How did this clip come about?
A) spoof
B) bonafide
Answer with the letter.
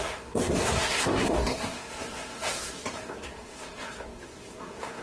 A